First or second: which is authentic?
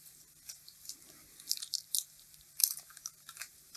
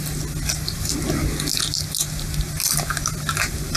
second